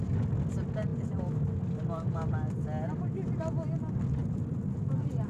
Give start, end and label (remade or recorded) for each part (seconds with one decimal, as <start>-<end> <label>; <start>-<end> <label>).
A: 0.0-4.2 recorded; 4.2-5.3 remade